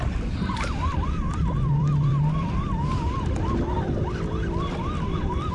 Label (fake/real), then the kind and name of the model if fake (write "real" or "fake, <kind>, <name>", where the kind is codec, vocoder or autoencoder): fake, vocoder, BigVGAN v2